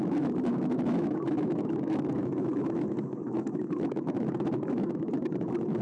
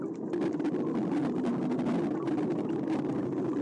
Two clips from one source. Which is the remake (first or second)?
first